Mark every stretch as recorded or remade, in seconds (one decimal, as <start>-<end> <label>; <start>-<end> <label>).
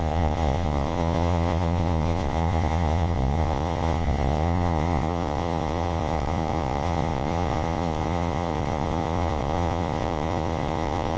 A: 0.0-11.2 remade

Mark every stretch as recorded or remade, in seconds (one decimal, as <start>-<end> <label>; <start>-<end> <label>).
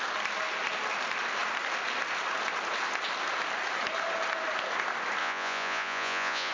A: 0.0-5.2 recorded; 5.2-6.5 remade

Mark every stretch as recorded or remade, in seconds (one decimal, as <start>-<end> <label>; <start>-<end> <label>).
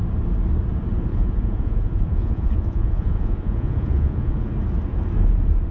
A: 0.0-1.1 recorded; 1.1-4.5 remade; 4.5-5.7 recorded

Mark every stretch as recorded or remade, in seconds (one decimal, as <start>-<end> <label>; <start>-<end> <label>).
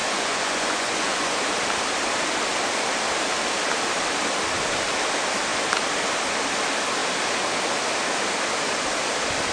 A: 0.0-1.4 remade; 1.4-9.5 recorded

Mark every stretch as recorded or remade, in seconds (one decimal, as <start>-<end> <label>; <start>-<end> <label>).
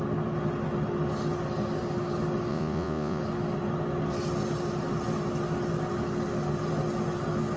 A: 0.0-2.5 recorded; 2.5-3.2 remade; 3.2-7.6 recorded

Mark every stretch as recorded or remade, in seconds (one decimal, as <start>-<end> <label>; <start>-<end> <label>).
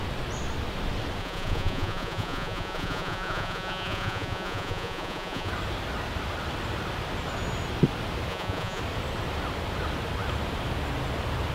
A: 0.0-1.2 recorded; 1.2-5.5 remade; 5.5-8.3 recorded; 8.3-8.8 remade; 8.8-11.5 recorded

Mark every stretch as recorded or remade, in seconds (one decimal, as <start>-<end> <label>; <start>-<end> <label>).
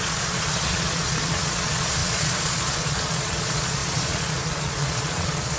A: 0.0-5.6 remade